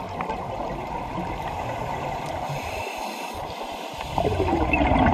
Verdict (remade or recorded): recorded